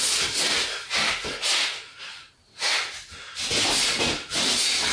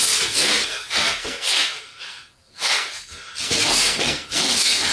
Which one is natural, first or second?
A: first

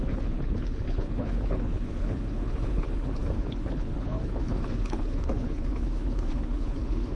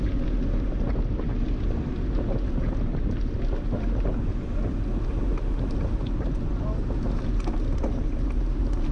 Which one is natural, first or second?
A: second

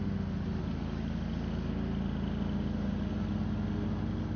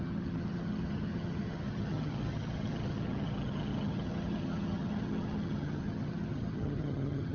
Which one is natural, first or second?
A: first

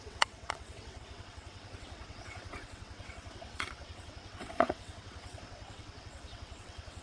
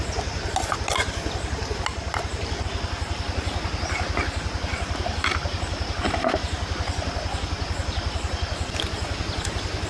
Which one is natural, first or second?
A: second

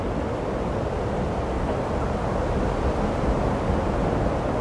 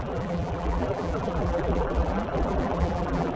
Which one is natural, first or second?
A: first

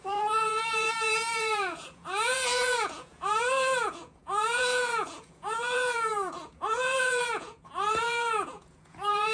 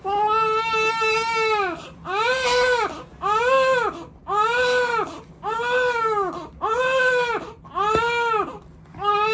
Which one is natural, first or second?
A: second